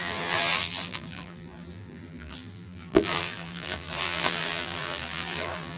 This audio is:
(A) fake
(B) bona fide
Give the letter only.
A